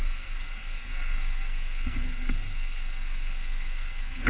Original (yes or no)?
no